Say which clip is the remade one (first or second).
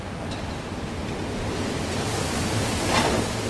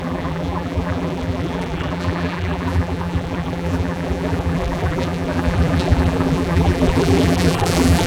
second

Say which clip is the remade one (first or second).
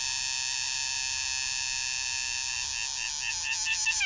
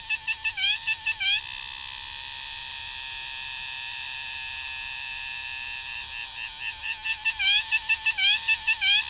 second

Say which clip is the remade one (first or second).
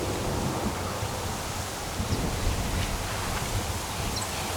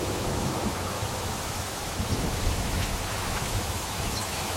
second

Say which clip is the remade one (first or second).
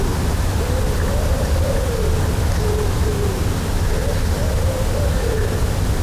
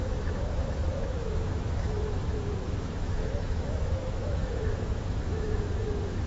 second